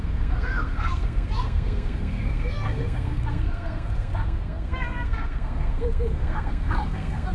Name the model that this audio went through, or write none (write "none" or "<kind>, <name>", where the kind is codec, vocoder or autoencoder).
codec, SNAC